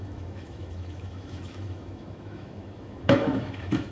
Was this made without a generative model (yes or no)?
no